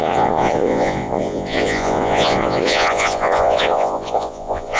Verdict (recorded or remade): remade